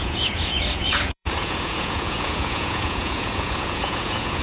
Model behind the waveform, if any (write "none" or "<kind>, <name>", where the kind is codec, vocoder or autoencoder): vocoder, Vocos